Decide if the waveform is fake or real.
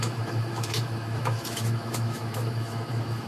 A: fake